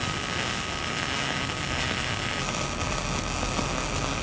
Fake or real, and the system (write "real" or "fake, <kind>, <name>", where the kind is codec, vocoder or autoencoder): real